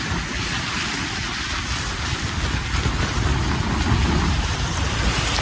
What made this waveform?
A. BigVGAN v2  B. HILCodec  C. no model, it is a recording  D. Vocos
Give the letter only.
C